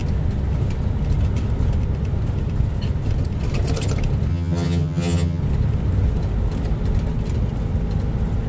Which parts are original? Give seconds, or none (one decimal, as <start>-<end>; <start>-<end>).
0.0-4.3; 5.4-8.5